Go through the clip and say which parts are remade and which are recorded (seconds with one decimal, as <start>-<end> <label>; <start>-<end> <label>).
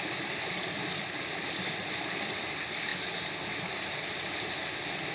0.0-5.1 recorded